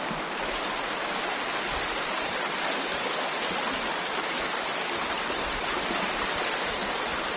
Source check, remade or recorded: recorded